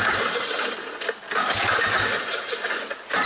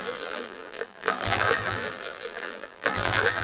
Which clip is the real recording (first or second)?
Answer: first